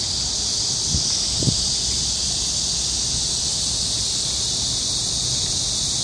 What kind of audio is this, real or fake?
real